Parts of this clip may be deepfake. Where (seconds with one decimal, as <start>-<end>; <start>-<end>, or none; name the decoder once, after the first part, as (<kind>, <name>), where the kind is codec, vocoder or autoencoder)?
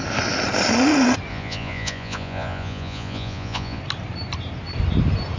1.3-3.8 (vocoder, Vocos)